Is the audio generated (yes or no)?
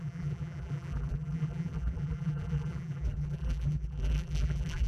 yes